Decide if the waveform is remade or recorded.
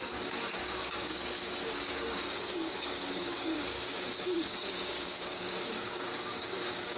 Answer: remade